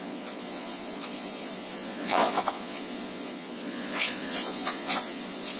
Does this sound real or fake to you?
fake